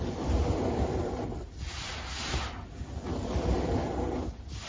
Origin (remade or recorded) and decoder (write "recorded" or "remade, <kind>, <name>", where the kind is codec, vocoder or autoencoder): recorded